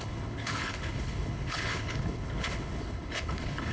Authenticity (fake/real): fake